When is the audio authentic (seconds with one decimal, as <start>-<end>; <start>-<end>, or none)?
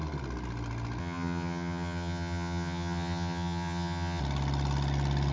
0.0-1.0; 4.2-5.3